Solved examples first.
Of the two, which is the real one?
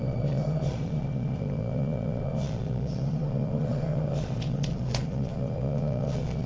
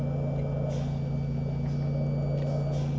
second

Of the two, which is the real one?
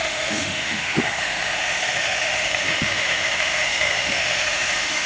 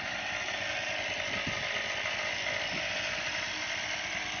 second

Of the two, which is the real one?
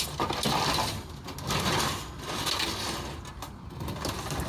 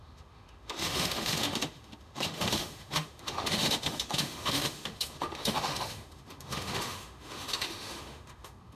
first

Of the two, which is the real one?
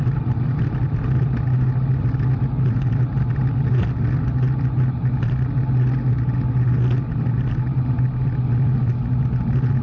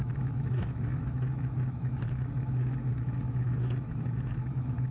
first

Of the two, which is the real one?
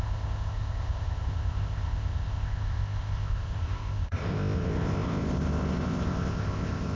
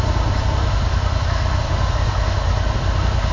second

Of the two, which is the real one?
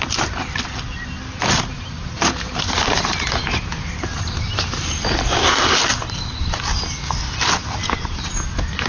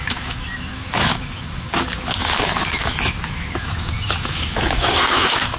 first